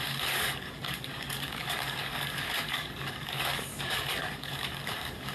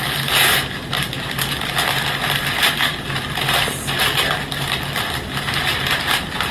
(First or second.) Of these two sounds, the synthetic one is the first